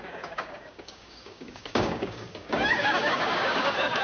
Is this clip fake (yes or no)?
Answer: yes